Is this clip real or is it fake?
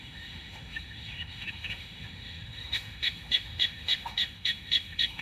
fake